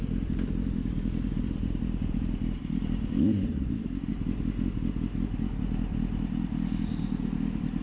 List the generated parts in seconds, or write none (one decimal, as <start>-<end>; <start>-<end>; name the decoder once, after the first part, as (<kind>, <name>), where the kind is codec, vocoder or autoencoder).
0.0-4.1 (vocoder, BigVGAN v2)